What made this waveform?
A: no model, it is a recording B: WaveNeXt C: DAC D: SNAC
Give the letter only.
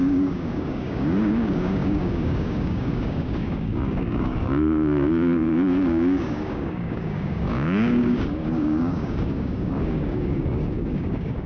C